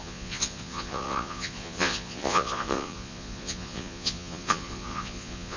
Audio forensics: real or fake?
fake